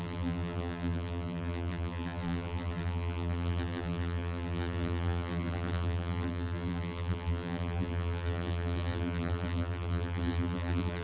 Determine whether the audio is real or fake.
fake